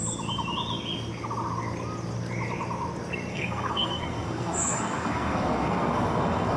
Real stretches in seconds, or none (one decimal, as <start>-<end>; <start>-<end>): 0.0-3.3